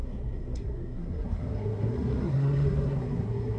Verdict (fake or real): fake